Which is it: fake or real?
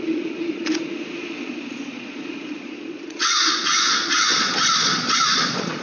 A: fake